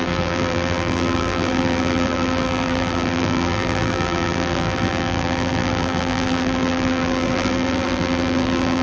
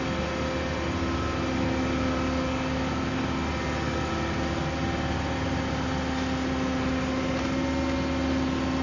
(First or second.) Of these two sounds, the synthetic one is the first